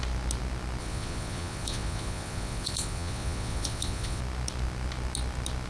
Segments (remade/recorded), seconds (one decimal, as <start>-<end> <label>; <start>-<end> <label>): 0.0-0.8 recorded; 0.8-4.2 remade; 4.2-5.7 recorded